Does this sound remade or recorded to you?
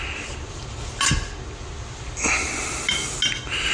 recorded